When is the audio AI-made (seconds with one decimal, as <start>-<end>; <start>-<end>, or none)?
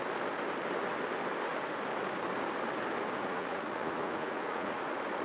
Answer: 3.2-4.8